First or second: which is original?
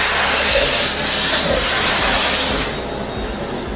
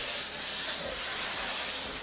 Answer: first